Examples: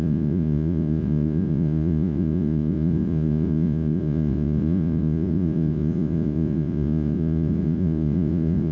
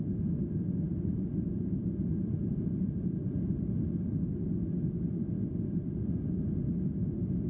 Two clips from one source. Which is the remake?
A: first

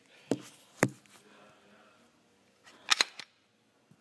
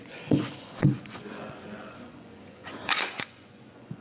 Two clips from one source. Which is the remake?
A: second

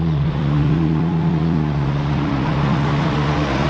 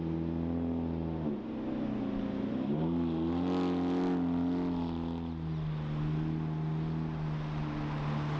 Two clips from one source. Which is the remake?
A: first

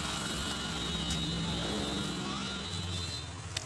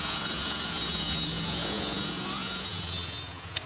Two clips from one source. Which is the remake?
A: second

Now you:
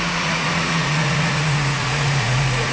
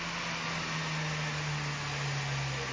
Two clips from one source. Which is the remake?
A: first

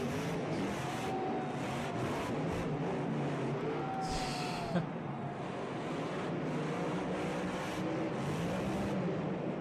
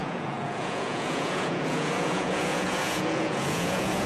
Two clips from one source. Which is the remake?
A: second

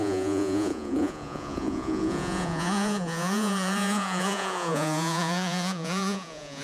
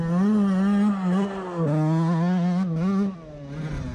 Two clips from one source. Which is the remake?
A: first